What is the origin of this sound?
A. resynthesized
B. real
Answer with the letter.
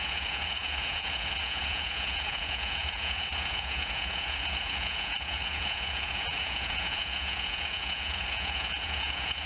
A